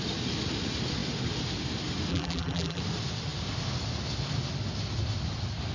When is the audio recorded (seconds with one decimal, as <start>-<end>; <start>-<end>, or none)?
0.0-2.1; 2.8-5.7

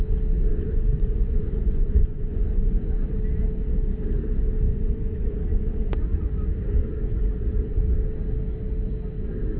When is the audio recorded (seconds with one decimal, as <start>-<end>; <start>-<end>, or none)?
0.0-0.5; 2.9-4.7; 7.2-9.6

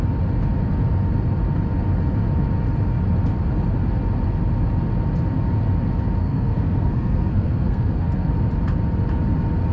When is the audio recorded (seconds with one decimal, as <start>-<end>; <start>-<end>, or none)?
0.0-6.2; 8.3-9.7

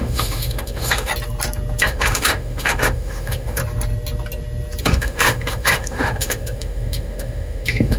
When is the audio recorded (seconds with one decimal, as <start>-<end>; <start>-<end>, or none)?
1.1-1.8; 3.6-4.8

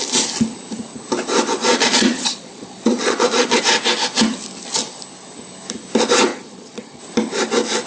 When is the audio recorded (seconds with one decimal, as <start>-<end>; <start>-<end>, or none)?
0.0-1.6; 3.6-6.3; 7.0-7.9

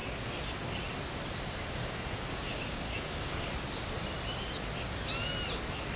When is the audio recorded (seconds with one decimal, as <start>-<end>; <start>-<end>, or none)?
0.0-1.8; 3.5-6.0

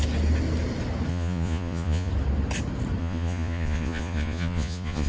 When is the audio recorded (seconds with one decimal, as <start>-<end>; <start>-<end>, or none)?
0.0-1.1; 2.1-3.0

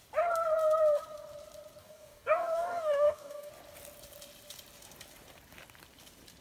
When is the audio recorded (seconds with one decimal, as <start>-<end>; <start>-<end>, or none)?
0.0-1.8; 3.5-6.4